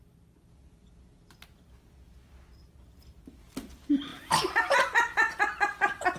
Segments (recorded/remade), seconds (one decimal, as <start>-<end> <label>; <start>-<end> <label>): 0.0-6.2 recorded